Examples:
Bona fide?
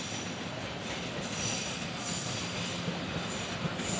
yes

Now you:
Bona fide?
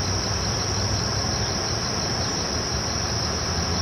no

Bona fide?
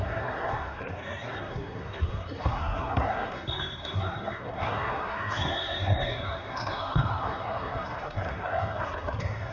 no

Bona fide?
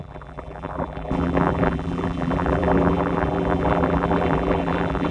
no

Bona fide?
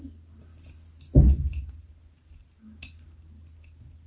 yes